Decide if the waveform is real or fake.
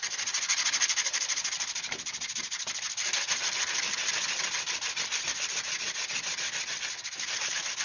real